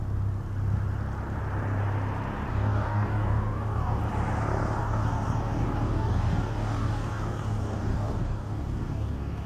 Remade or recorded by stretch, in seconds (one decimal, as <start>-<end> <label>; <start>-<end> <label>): 0.0-2.5 recorded; 2.5-4.0 remade; 4.0-4.8 recorded; 4.8-9.5 remade